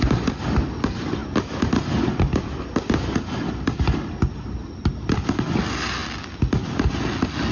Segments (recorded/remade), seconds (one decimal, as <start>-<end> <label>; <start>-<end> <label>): 0.0-7.5 recorded